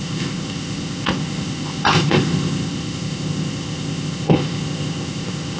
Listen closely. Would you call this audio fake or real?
fake